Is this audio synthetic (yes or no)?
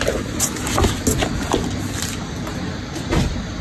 no